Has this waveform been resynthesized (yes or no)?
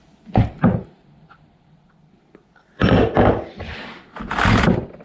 no